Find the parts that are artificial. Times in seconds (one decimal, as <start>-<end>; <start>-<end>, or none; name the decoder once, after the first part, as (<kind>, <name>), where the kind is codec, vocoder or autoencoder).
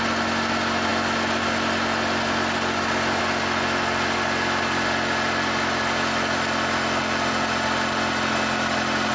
none